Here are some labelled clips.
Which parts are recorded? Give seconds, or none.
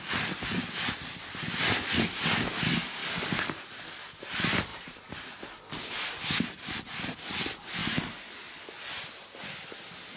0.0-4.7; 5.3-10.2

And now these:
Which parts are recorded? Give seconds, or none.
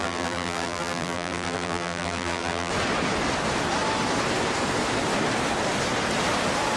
2.7-6.8